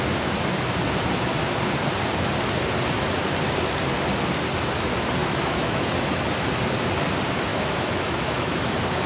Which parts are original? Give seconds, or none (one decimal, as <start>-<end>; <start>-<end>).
0.0-5.2; 5.9-7.5; 8.7-9.1